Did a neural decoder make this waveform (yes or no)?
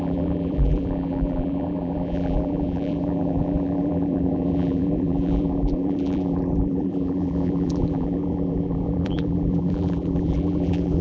yes